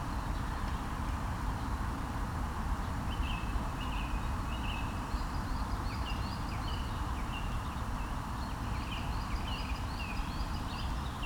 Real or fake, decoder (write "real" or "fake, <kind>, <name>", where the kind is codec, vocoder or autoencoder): fake, vocoder, BigVGAN v2